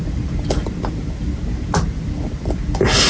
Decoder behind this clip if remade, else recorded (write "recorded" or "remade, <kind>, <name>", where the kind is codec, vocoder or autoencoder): recorded